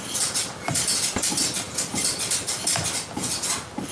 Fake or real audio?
real